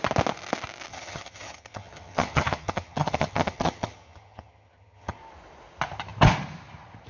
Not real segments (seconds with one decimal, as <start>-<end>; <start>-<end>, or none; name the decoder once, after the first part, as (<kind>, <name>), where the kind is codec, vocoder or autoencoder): 0.9-5.2 (vocoder, HiFi-GAN)